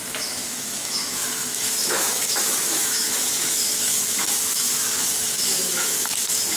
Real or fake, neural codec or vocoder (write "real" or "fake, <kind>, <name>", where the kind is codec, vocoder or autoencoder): fake, autoencoder, DAC-VAE